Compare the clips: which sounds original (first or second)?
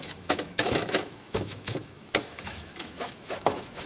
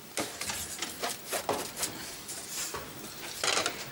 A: second